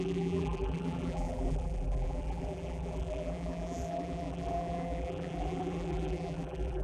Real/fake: fake